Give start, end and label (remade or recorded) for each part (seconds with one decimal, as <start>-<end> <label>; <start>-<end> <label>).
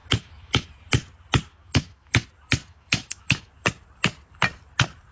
0.0-0.6 remade; 0.6-1.5 recorded; 1.5-2.2 remade; 2.2-2.7 recorded; 2.7-3.5 remade; 3.5-5.1 recorded